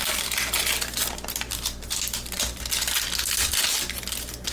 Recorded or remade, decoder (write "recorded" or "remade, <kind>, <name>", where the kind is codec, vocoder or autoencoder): recorded